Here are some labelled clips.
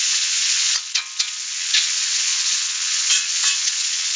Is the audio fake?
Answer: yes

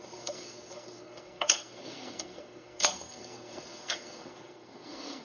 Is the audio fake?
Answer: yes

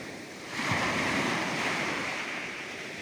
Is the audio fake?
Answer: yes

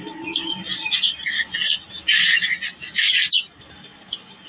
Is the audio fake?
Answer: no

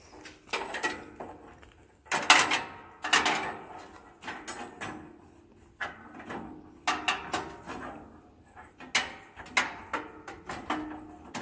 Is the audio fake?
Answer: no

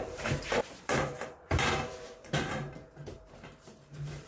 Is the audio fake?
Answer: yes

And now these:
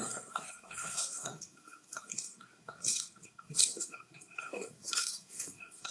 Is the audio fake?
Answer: yes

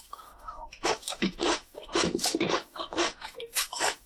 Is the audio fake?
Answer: yes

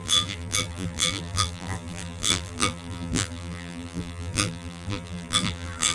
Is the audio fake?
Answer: yes